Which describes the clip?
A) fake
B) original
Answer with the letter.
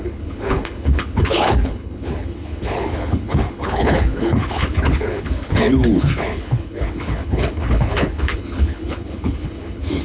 A